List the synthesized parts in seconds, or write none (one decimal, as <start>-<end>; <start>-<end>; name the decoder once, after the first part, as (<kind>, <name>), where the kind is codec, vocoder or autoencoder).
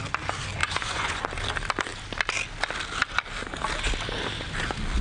0.6-1.2 (vocoder, Vocos)